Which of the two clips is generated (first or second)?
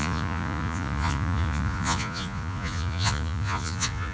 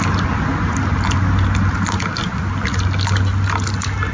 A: first